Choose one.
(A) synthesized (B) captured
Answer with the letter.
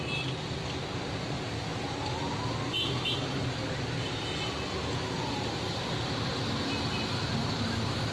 B